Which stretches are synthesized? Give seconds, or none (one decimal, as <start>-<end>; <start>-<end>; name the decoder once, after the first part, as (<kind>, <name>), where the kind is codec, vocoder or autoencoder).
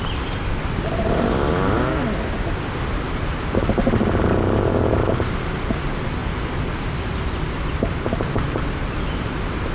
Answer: none